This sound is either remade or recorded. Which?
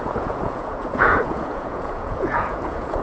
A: remade